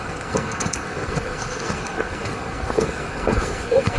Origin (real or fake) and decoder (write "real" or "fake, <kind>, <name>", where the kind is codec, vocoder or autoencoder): fake, codec, SNAC